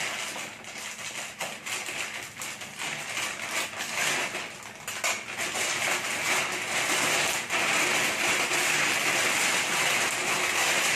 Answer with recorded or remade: recorded